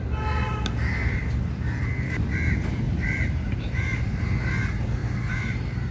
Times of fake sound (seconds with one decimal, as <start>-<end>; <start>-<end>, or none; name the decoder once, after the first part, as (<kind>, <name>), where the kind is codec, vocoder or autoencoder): 1.0-4.5 (vocoder, BigVGAN v2); 5.0-5.9